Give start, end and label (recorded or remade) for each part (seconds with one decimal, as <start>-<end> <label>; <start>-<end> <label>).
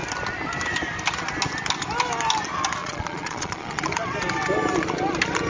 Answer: 0.0-2.8 recorded; 2.8-3.9 remade; 3.9-5.5 recorded